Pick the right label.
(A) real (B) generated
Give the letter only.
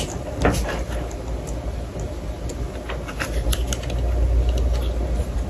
A